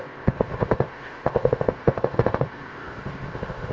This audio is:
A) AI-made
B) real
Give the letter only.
A